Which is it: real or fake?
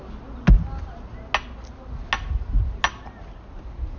real